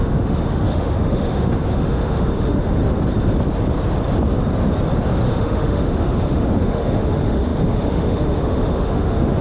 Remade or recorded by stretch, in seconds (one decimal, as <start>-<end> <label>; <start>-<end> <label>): 0.0-2.8 remade; 2.8-5.3 recorded; 5.3-9.4 remade